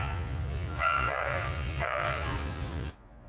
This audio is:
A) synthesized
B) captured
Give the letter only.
A